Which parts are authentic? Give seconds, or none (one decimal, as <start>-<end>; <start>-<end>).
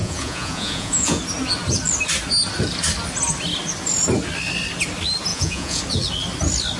1.2-5.3; 5.8-6.8